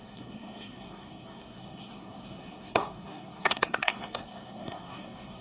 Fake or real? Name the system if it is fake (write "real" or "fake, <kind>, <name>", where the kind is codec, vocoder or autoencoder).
fake, codec, SNAC